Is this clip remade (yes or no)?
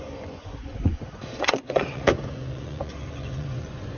yes